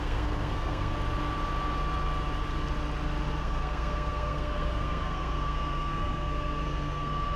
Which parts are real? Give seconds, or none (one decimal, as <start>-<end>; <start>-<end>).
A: 0.9-3.4